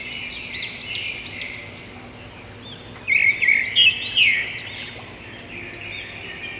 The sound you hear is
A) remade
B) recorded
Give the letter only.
B